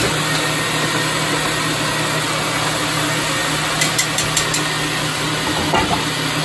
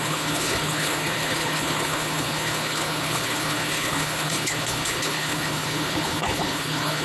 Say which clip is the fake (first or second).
second